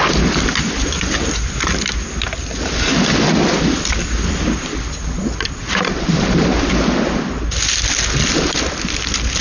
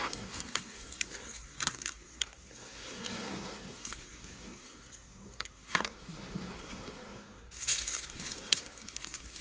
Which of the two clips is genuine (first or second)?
first